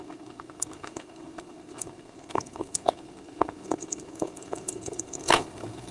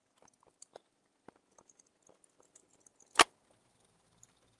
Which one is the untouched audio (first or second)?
second